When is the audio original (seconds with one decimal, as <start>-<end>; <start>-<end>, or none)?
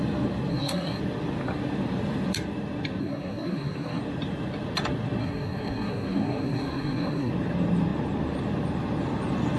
0.0-0.5; 1.0-3.0; 4.0-5.2; 7.3-9.6